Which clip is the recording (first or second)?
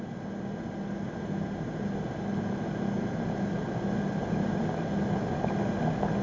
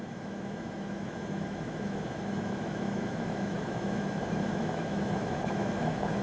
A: first